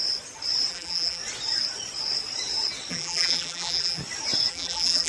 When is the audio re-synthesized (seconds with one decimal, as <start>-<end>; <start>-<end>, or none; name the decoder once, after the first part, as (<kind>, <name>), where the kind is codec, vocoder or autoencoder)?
0.7-1.2 (vocoder, BigVGAN v2); 2.9-4.0; 4.5-5.1